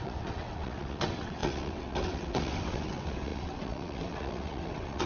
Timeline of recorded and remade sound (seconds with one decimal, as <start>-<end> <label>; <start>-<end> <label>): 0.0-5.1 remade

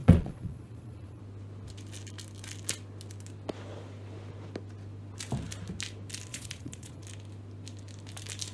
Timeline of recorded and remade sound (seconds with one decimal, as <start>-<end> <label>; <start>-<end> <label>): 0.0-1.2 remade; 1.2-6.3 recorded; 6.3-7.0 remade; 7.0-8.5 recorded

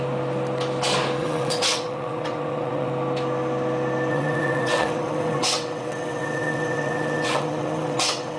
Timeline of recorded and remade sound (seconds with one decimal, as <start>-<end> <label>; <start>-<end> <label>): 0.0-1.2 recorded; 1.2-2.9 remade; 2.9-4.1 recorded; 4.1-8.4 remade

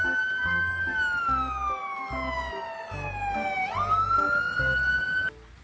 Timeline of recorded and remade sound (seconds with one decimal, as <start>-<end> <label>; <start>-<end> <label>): 0.0-5.6 recorded

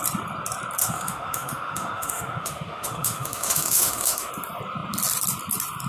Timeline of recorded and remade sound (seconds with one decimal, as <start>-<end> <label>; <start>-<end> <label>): 0.0-0.8 recorded; 0.8-4.3 remade; 4.3-5.9 recorded

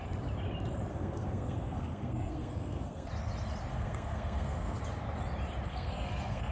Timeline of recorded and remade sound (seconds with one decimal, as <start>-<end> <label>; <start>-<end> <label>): 0.0-0.9 recorded; 0.9-3.1 remade; 3.1-3.7 recorded; 3.7-4.8 remade; 4.8-5.7 recorded; 5.7-6.5 remade

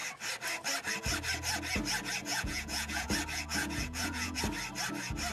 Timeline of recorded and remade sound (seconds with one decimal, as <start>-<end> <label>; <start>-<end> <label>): 0.0-2.3 recorded; 2.3-3.1 remade; 3.1-3.6 recorded; 3.6-4.4 remade; 4.4-5.3 recorded

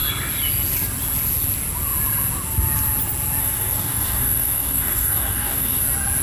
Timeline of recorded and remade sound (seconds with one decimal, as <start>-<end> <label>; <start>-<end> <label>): 0.0-3.4 recorded; 3.4-5.8 remade; 5.8-6.2 recorded